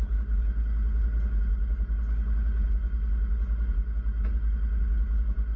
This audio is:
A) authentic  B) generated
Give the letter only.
A